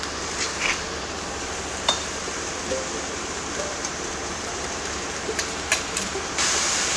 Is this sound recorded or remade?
remade